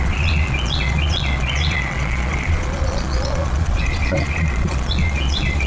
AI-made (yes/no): yes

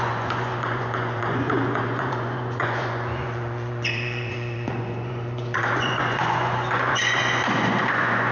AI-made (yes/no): yes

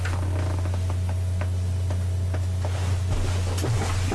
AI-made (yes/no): no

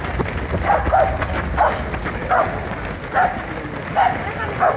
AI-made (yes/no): no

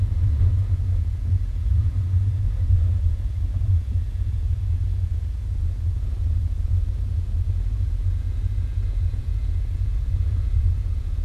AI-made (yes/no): yes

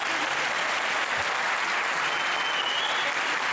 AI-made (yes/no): no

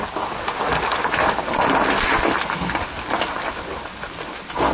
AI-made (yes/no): no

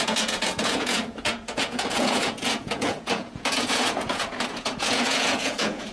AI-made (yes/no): yes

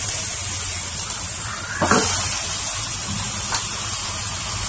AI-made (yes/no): no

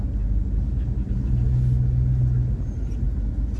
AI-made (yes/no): no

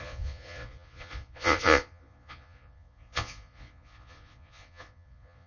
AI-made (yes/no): yes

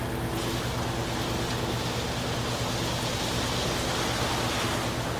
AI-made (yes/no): no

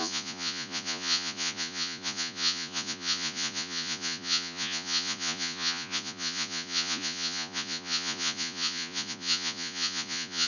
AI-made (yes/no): yes